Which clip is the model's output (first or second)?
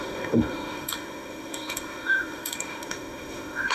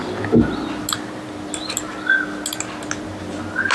first